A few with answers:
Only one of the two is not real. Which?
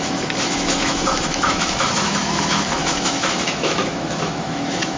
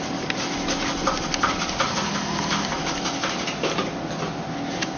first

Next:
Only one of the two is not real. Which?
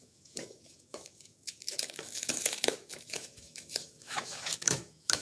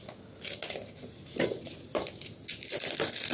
first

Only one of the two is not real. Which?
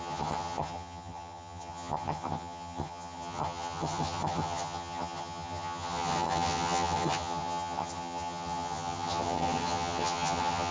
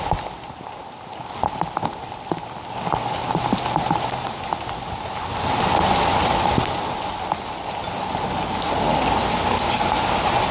first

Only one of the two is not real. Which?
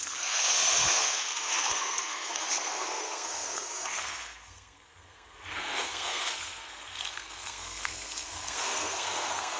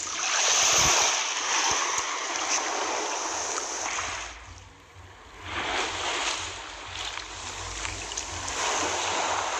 first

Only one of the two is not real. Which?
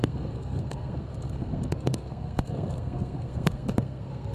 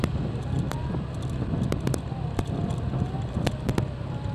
first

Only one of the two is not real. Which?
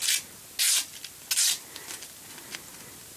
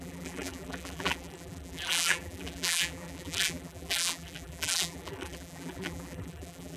second